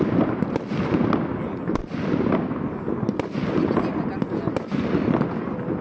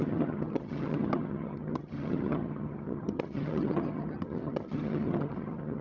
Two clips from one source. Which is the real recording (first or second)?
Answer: first